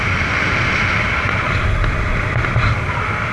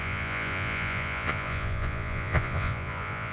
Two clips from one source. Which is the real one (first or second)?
first